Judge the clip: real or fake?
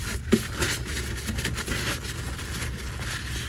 real